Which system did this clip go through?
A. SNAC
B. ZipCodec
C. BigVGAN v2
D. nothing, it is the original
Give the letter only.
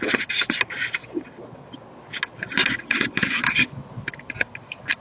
D